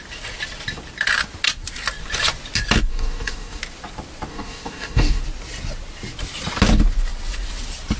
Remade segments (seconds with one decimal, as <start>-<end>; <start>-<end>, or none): 2.9-3.6; 4.3-5.2